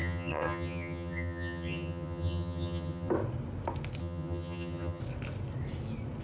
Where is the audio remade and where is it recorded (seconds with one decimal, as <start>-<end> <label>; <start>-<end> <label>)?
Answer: 0.0-3.1 remade; 3.1-4.0 recorded; 4.0-5.0 remade; 5.0-6.2 recorded